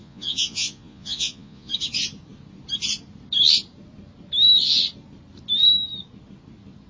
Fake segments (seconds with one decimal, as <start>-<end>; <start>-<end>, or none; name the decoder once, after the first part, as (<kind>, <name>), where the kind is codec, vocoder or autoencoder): 0.0-1.7 (vocoder, Vocos)